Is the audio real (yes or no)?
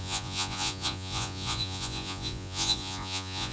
no